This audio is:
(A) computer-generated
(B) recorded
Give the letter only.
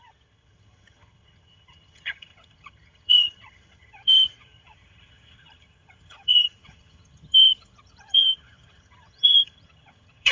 A